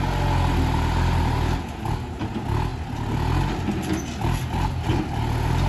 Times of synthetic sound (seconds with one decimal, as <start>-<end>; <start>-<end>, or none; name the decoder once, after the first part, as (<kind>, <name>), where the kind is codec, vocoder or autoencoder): none